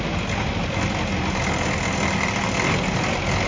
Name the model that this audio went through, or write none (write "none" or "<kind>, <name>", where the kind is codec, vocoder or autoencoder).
none